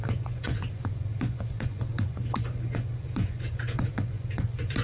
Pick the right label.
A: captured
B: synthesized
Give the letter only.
B